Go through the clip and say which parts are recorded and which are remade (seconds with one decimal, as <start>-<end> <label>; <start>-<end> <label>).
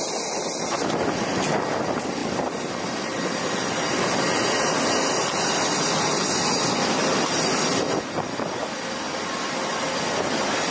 0.0-10.7 recorded